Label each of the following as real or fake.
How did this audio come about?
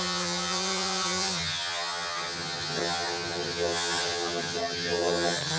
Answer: fake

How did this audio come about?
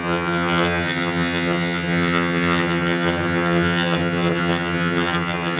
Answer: fake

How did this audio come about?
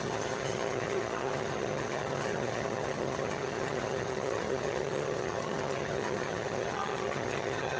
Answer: fake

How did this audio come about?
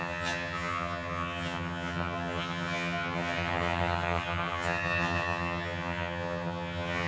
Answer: fake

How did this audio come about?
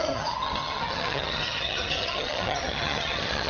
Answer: fake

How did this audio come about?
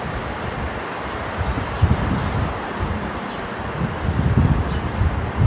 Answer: real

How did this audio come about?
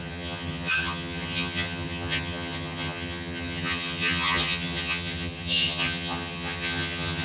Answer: fake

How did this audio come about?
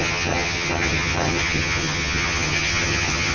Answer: fake